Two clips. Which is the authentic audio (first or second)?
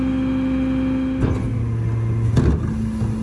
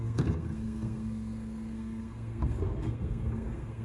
first